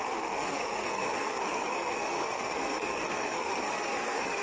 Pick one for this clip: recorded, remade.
remade